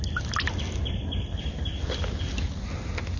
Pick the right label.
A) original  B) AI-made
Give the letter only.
A